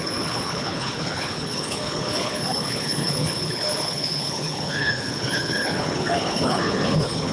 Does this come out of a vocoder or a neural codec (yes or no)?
yes